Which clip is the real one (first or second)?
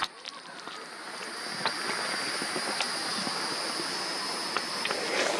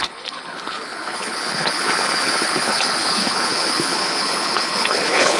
first